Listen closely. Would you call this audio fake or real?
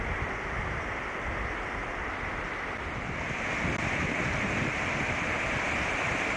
real